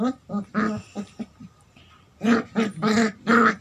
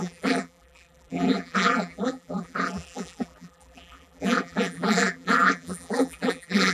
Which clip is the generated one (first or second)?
second